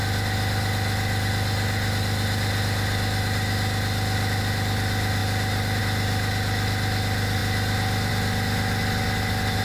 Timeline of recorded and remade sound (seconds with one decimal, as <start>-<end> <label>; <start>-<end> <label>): 0.0-9.6 recorded